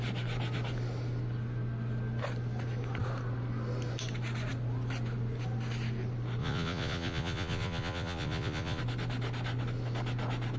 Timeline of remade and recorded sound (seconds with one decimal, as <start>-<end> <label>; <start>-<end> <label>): 0.0-6.4 recorded; 6.4-8.8 remade; 8.8-10.6 recorded